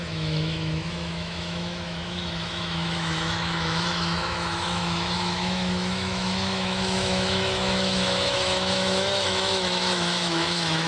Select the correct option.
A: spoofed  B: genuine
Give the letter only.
A